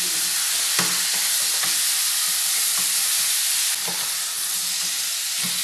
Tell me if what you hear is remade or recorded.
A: recorded